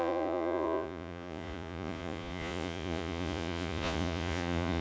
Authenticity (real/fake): fake